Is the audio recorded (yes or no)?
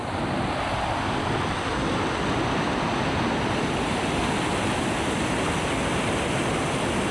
yes